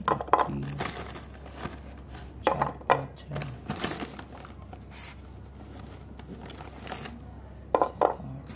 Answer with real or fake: real